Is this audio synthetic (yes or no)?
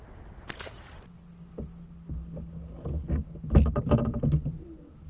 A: no